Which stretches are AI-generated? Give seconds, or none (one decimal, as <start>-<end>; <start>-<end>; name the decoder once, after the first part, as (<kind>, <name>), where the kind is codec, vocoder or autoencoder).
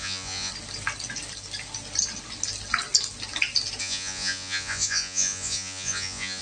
0.0-0.5 (vocoder, Vocos); 3.8-6.4